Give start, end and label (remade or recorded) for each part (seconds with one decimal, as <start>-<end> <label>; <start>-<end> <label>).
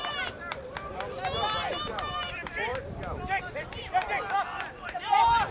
0.0-5.5 recorded